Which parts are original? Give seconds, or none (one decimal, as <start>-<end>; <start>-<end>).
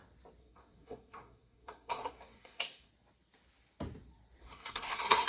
0.0-0.4; 2.9-4.4